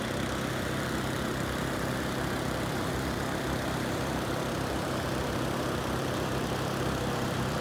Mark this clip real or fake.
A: fake